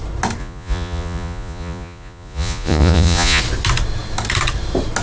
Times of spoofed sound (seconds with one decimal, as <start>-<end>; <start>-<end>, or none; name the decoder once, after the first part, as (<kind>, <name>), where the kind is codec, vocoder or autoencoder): 0.4-3.4 (vocoder, Vocos)